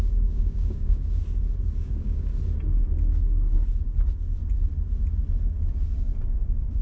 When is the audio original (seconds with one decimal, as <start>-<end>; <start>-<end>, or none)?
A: 1.2-1.8; 2.3-6.2